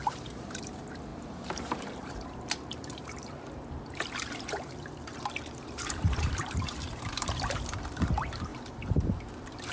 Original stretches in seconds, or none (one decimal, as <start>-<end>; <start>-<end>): none